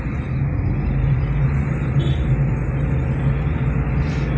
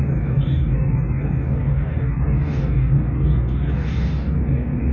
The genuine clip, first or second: first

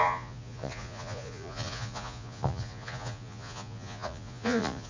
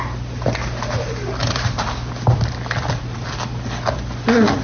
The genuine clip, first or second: second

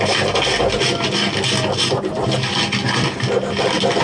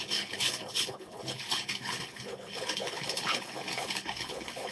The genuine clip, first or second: first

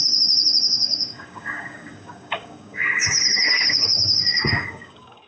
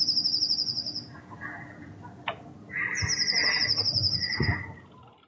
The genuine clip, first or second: second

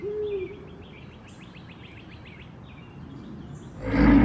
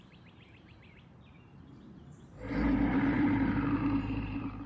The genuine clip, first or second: first